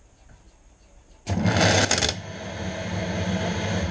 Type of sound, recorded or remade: recorded